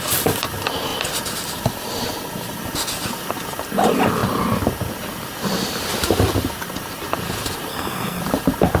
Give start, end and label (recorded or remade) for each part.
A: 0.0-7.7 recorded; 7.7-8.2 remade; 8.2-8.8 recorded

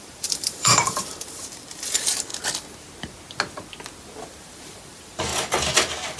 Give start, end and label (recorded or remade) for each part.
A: 0.0-2.3 remade; 2.3-4.4 recorded; 4.4-5.3 remade; 5.3-6.2 recorded

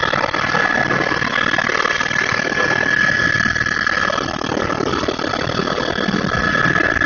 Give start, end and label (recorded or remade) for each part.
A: 0.0-7.1 recorded

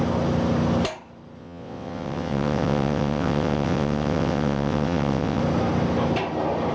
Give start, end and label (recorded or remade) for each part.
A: 0.0-1.4 recorded; 1.4-5.4 remade; 5.4-6.7 recorded

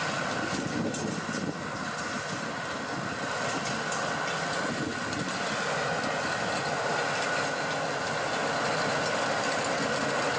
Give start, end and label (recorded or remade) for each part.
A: 0.0-10.4 recorded

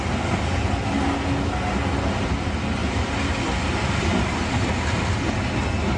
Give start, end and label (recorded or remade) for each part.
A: 0.0-6.0 recorded